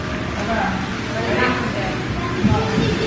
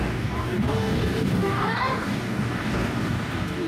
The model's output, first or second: second